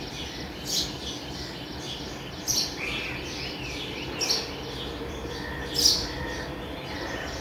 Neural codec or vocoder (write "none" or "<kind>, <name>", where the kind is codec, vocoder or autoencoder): none